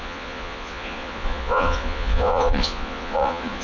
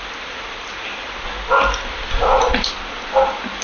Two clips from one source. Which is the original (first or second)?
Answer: second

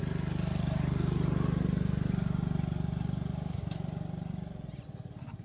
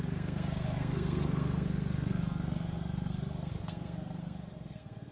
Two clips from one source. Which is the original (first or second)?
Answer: first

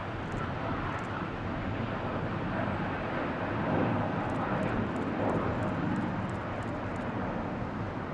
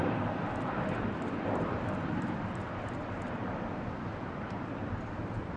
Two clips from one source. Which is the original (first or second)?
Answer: first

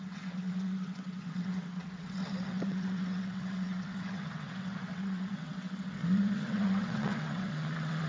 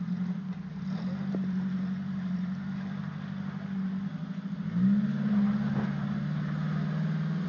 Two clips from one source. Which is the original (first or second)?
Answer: second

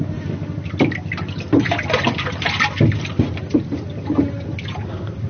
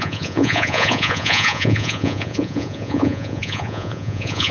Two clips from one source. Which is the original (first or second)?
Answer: first